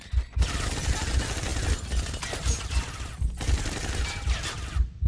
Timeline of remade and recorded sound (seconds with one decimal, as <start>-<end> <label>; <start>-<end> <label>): 0.0-5.1 recorded